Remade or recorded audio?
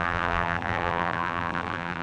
remade